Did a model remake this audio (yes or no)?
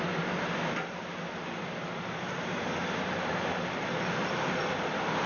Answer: no